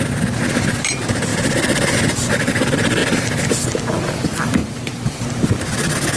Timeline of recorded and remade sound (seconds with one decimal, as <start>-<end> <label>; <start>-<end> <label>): 0.0-4.6 recorded; 4.6-5.2 remade; 5.2-6.2 recorded